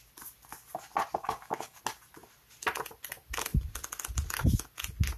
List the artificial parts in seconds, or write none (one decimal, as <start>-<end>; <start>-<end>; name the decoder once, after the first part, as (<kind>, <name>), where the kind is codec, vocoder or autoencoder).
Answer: 1.2-1.8 (codec, DAC)